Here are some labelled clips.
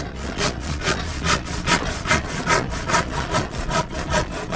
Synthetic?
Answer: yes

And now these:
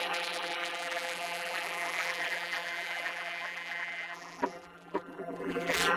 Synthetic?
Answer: yes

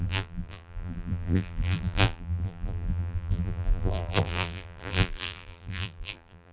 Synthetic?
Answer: yes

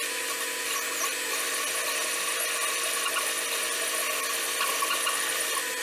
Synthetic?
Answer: no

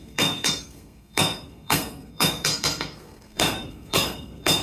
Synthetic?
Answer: yes